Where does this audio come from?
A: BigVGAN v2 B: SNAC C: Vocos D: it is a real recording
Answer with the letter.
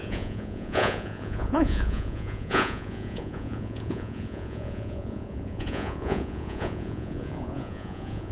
C